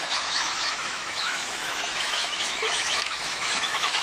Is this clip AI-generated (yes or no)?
yes